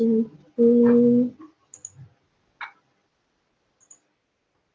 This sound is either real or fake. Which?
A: real